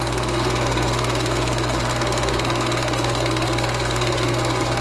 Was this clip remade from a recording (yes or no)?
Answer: yes